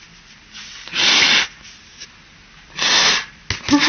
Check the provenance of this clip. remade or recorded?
recorded